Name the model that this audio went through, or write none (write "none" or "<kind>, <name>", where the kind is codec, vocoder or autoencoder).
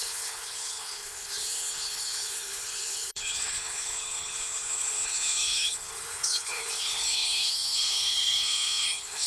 codec, HILCodec